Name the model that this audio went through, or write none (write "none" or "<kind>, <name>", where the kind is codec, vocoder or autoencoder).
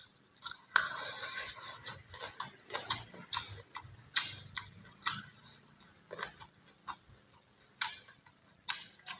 none